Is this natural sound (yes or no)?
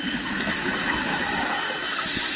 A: no